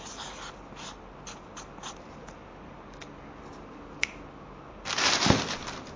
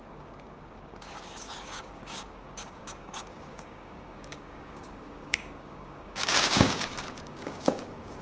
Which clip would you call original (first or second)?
first